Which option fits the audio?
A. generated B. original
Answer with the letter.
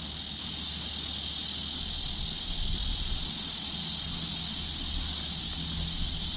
B